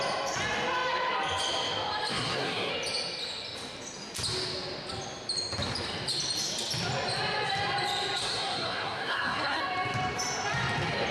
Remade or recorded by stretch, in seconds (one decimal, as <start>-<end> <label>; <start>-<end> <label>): 0.0-2.1 recorded; 2.1-2.7 remade; 2.7-8.2 recorded; 8.2-9.6 remade; 9.6-11.1 recorded